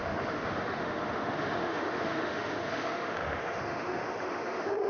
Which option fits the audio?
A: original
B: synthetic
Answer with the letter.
B